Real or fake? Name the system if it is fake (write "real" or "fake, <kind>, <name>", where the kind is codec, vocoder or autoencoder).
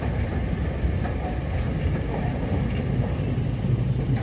real